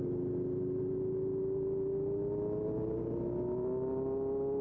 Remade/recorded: recorded